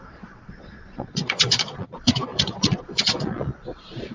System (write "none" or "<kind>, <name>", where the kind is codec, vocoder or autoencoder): vocoder, Vocos